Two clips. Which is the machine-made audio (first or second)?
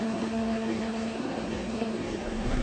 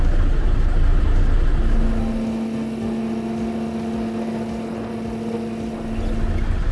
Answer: first